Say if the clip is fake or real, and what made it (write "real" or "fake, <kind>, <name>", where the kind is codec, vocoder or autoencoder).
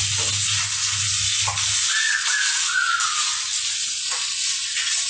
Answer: real